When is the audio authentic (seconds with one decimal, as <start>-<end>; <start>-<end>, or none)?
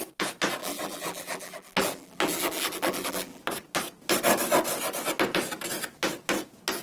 0.0-0.6; 3.4-6.8